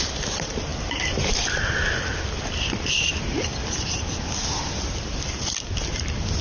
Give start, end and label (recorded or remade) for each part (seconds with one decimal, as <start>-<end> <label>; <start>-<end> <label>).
0.0-6.4 recorded